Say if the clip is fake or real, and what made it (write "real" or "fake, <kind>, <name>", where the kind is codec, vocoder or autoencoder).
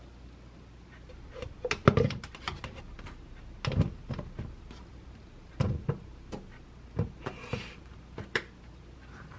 real